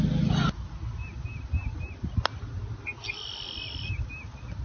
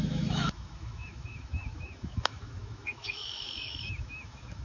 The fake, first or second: second